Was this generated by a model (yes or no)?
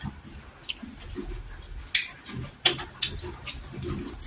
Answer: no